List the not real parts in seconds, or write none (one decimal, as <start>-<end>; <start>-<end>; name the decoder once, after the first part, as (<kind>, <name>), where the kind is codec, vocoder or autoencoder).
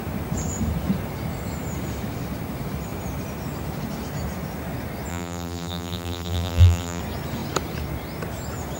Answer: 5.1-7.0 (vocoder, BigVGAN v2)